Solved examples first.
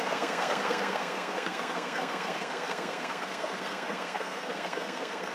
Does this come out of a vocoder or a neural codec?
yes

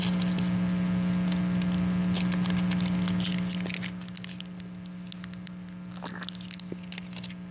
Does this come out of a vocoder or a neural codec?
no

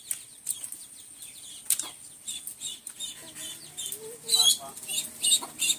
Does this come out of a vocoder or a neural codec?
no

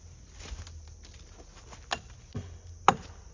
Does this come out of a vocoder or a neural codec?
no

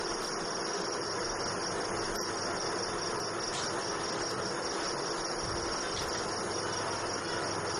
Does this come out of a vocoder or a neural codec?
no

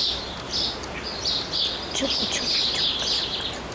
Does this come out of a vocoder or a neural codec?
no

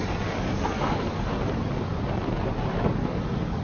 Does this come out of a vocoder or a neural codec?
no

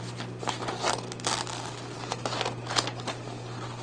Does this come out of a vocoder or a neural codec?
no